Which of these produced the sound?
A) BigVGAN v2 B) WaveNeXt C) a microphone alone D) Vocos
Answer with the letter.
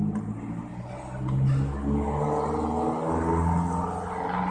C